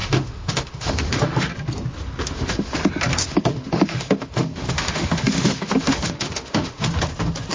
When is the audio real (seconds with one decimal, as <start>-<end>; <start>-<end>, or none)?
1.5-2.2; 2.8-3.2; 6.9-7.5